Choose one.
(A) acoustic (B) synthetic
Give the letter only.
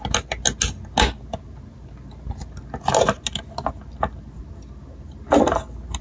A